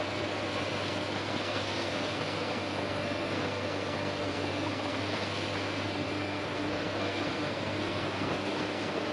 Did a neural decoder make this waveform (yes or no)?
yes